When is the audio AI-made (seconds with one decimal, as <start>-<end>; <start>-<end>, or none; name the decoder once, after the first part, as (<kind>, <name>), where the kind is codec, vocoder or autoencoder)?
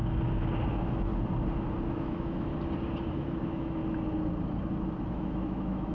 0.7-1.1 (autoencoder, DAC-VAE); 1.9-2.5; 3.1-3.8; 5.1-5.9